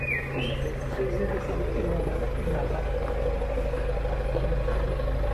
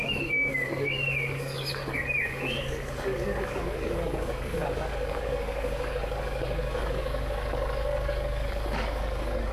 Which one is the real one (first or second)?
first